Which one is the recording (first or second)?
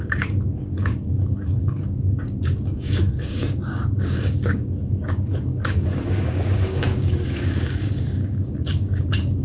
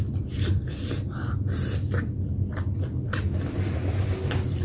second